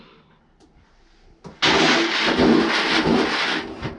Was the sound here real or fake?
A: real